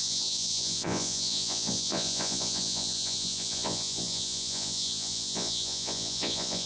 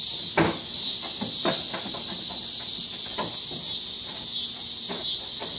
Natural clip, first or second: second